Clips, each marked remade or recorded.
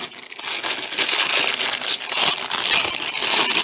recorded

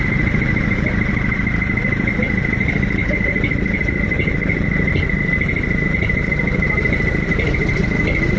remade